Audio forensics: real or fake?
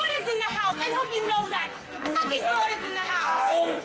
fake